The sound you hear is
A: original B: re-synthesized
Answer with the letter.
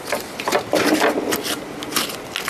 A